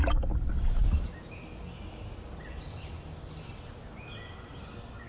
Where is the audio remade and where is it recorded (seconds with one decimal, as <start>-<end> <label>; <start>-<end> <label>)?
0.0-5.1 recorded